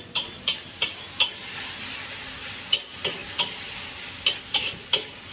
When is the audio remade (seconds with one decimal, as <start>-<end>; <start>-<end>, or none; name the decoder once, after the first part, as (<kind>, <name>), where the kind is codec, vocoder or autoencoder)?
none